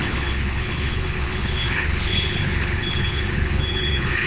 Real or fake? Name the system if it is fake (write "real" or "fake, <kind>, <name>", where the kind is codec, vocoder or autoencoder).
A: fake, codec, HILCodec